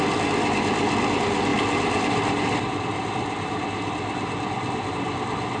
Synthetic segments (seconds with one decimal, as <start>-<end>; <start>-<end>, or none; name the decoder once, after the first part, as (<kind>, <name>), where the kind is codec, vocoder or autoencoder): none